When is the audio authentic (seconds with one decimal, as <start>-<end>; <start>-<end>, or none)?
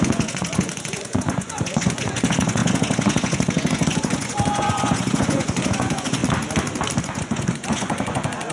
6.2-7.0